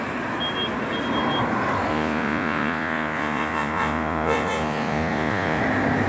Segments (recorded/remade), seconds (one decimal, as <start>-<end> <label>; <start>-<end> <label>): 0.0-1.9 recorded; 1.9-5.6 remade; 5.6-6.1 recorded